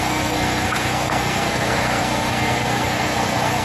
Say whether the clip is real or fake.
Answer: fake